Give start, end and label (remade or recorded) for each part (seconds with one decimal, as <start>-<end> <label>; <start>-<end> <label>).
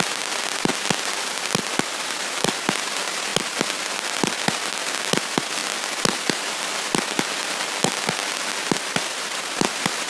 0.0-10.1 recorded